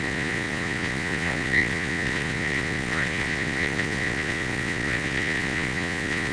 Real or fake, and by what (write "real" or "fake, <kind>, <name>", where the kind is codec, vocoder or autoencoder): fake, vocoder, Vocos